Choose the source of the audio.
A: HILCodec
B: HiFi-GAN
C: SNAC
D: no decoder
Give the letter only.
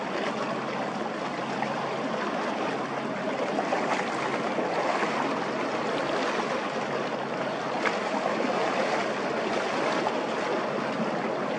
D